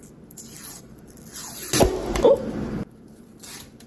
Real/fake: real